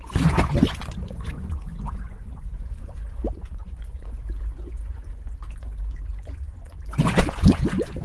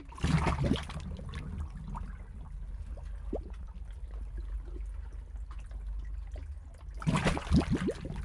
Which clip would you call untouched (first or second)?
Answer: second